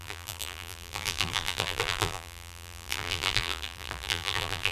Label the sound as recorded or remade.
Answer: remade